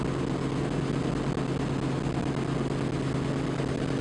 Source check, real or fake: real